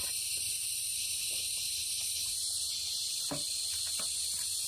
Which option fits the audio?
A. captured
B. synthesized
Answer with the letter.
B